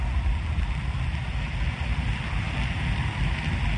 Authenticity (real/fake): real